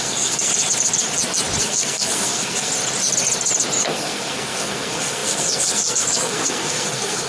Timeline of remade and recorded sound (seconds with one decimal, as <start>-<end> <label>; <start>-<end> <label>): 0.0-0.5 remade; 0.5-1.6 recorded; 1.6-2.7 remade; 2.7-3.8 recorded; 3.8-7.3 remade